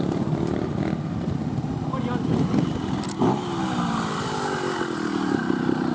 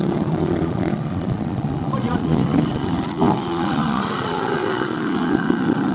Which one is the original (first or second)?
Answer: first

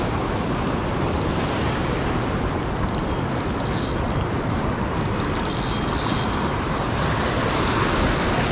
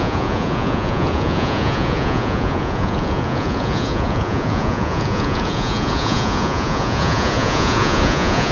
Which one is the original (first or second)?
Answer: first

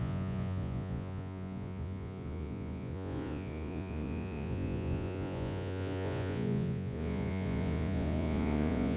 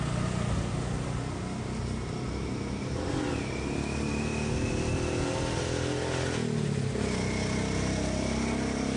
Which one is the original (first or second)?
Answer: second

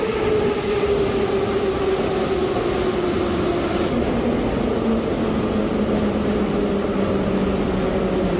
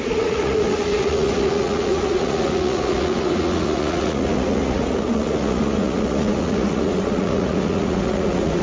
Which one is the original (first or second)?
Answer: first